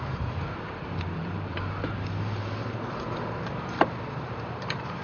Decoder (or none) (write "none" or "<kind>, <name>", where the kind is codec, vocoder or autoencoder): vocoder, BigVGAN v2